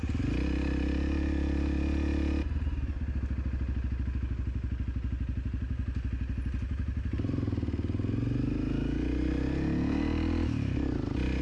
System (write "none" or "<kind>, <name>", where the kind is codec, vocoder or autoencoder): none